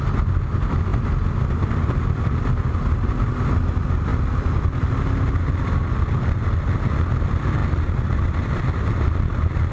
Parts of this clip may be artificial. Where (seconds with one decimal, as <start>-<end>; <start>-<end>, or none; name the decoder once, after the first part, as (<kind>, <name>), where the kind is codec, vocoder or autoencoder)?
none